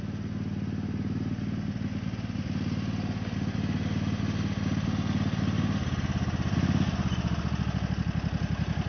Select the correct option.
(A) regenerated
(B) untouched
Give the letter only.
B